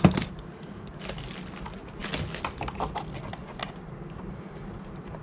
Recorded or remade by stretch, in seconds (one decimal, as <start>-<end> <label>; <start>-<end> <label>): 0.0-5.2 recorded